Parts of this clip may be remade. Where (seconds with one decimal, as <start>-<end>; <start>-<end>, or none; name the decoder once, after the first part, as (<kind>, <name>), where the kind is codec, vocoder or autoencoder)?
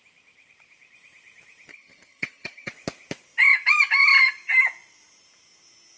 1.7-2.7 (vocoder, HiFi-GAN)